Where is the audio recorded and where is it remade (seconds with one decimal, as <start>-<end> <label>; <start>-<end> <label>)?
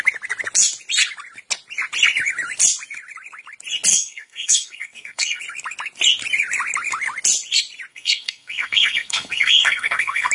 0.0-3.9 recorded; 3.9-5.4 remade; 5.4-7.9 recorded; 7.9-10.3 remade